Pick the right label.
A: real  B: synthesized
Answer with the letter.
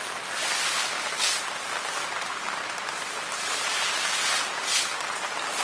A